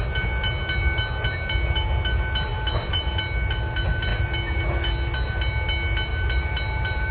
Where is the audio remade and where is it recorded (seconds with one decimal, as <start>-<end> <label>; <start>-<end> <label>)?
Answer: 0.0-2.5 recorded; 2.5-3.1 remade; 3.1-4.1 recorded; 4.1-4.6 remade; 4.6-6.1 recorded; 6.1-7.1 remade